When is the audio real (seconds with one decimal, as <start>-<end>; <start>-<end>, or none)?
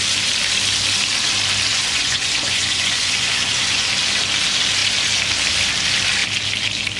0.0-1.7; 3.9-7.0